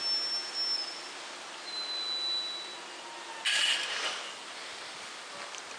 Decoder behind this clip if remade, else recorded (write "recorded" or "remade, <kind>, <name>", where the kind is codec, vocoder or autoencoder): recorded